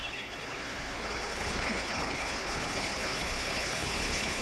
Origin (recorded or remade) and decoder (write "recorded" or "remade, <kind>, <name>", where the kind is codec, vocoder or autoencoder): remade, codec, HILCodec